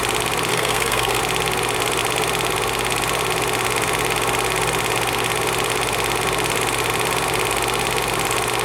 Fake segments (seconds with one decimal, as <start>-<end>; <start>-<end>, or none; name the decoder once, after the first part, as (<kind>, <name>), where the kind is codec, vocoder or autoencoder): 0.5-1.2 (codec, SNAC)

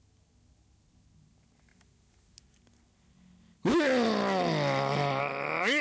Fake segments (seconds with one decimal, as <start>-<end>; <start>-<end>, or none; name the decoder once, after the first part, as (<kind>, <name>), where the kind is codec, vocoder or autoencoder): none

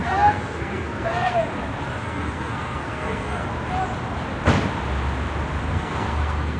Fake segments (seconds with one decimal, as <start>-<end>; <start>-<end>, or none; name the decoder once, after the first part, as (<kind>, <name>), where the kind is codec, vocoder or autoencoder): 0.0-1.5 (codec, SNAC); 2.0-3.5; 5.6-6.6

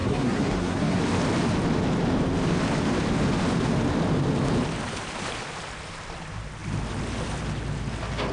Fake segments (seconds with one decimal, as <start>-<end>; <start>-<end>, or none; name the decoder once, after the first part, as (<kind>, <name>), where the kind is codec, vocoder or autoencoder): 0.0-1.0 (codec, SNAC)

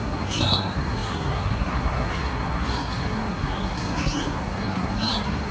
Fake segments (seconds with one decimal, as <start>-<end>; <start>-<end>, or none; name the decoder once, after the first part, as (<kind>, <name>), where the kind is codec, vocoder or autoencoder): 0.0-5.5 (codec, SNAC)